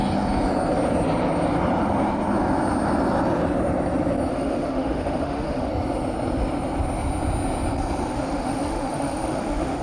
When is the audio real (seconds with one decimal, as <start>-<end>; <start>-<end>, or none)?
0.0-4.3; 5.7-8.1